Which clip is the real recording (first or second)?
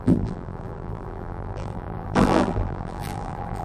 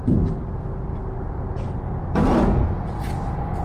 second